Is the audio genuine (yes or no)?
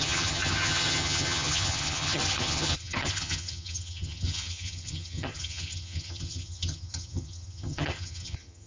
no